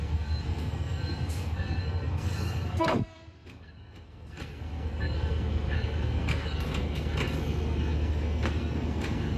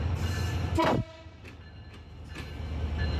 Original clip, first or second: second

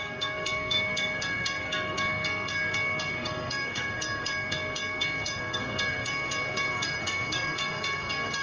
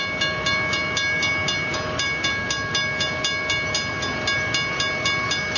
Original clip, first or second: second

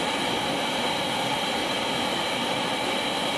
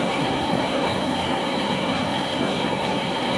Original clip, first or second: first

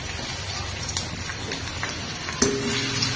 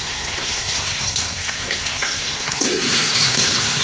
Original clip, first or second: first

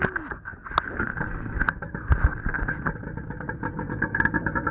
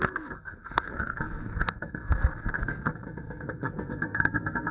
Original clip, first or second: first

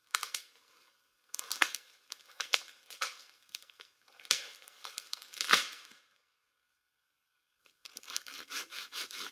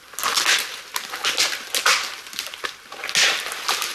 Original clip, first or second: second